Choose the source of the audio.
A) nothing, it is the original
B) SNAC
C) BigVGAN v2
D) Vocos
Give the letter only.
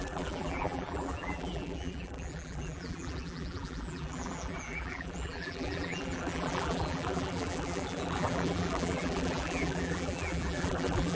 C